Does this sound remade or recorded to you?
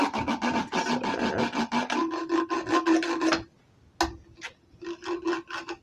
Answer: recorded